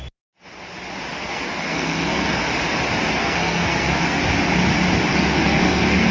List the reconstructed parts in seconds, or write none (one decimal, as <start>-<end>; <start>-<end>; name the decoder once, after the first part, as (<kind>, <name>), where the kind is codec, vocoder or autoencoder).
1.1-2.4 (codec, SNAC); 3.2-4.2; 5.1-6.1